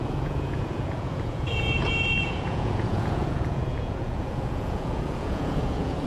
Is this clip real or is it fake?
fake